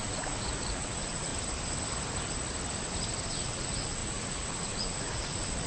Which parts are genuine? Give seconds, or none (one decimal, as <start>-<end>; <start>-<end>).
1.3-3.3